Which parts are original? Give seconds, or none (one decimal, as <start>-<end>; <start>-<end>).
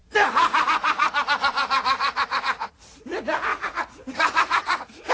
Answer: 3.1-3.5